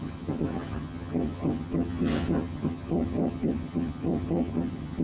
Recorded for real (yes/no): no